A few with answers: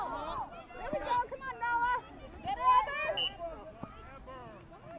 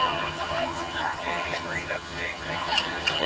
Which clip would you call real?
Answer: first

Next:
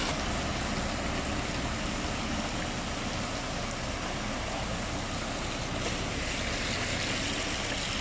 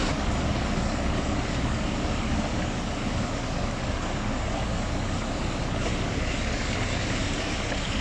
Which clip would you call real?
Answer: first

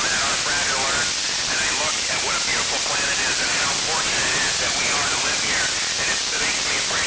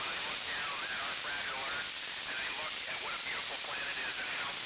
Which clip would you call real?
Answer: first